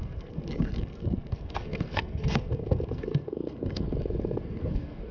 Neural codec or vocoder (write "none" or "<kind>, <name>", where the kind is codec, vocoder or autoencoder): codec, SNAC